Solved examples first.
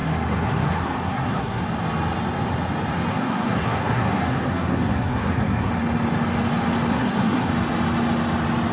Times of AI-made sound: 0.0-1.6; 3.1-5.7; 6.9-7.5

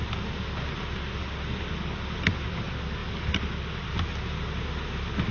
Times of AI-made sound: none

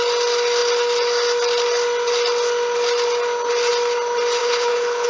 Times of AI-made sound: 4.4-5.1

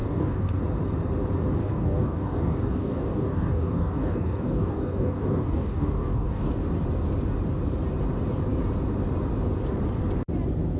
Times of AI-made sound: 0.0-0.6; 1.6-6.5

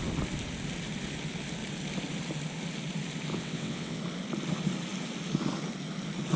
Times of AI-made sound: 3.3-4.0

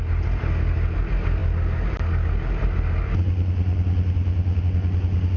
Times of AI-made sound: none